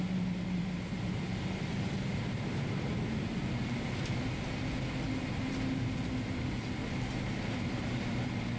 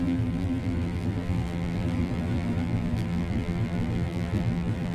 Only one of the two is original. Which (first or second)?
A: first